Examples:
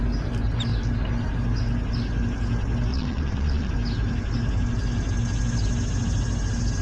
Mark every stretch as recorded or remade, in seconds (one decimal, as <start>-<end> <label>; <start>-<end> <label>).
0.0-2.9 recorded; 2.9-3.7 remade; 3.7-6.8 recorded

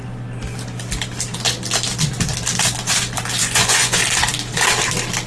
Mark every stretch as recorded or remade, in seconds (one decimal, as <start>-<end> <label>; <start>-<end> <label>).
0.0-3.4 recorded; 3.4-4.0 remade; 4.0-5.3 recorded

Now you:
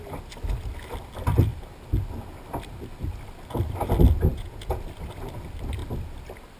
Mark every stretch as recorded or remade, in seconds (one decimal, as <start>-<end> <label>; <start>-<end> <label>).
0.0-4.3 recorded; 4.3-4.8 remade; 4.8-6.6 recorded

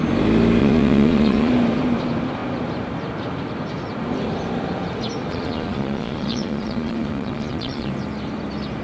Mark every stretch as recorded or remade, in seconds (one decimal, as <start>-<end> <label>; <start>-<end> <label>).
0.0-0.6 recorded; 0.6-1.5 remade; 1.5-5.3 recorded; 5.3-7.9 remade; 7.9-8.8 recorded